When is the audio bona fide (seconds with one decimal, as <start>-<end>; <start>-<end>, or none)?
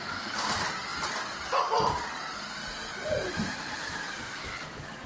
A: 0.0-2.9; 4.3-5.1